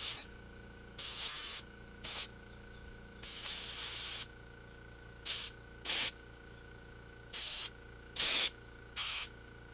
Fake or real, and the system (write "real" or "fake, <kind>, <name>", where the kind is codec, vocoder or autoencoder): fake, autoencoder, DAC-VAE